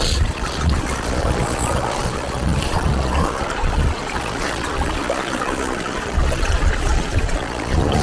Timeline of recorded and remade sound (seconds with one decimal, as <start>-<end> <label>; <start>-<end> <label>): 0.0-8.0 remade